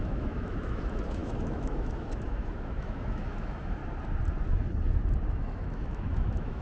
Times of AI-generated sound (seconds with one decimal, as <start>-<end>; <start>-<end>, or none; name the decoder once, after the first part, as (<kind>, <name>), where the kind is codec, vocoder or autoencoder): 0.0-3.8 (autoencoder, DAC-VAE); 5.3-6.6